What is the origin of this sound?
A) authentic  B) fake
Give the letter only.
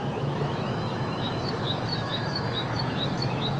B